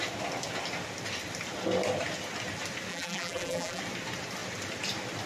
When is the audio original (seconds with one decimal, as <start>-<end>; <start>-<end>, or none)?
0.0-2.9; 3.8-5.3